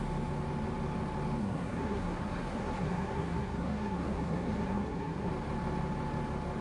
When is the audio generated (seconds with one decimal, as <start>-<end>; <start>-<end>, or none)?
1.4-5.3